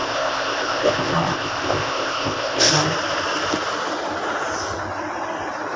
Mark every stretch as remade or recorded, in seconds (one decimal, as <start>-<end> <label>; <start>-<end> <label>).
0.0-2.7 remade; 2.7-5.8 recorded

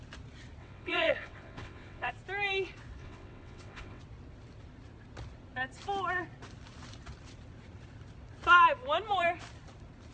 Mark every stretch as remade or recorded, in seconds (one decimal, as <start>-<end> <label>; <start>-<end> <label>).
0.0-0.6 recorded; 0.6-2.1 remade; 2.1-3.0 recorded; 3.0-4.0 remade; 4.0-10.1 recorded

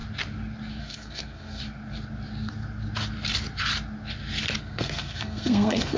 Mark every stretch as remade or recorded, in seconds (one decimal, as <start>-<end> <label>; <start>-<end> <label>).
0.0-0.8 recorded; 0.8-1.6 remade; 1.6-4.6 recorded; 4.6-6.0 remade

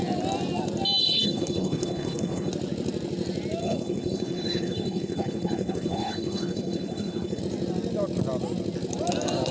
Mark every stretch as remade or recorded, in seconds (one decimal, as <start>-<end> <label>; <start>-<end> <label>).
0.0-1.0 recorded; 1.0-2.5 remade; 2.5-3.6 recorded; 3.6-7.4 remade; 7.4-9.5 recorded

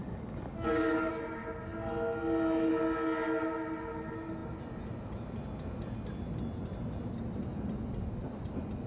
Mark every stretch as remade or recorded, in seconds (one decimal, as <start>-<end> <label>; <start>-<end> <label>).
0.0-1.1 remade; 1.1-8.9 recorded